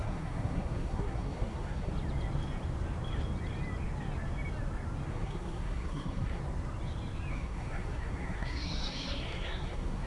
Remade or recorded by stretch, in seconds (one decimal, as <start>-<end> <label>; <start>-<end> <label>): 0.0-1.9 remade; 1.9-5.1 recorded; 5.1-6.4 remade; 6.4-7.3 recorded; 7.3-10.1 remade